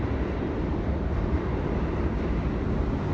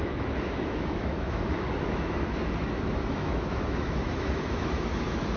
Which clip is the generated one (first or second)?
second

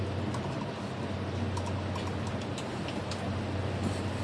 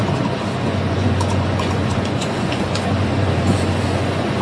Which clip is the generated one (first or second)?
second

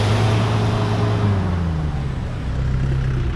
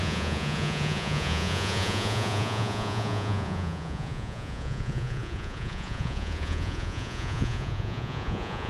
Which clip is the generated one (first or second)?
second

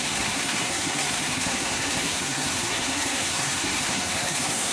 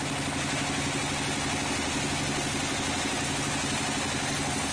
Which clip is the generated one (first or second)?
first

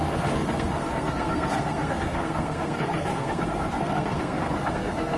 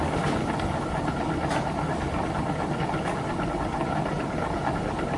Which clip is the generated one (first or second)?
first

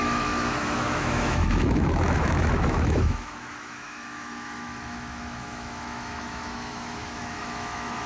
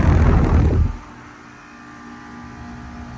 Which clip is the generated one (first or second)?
first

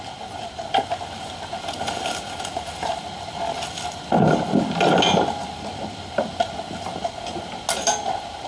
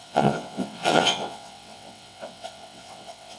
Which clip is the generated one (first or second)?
second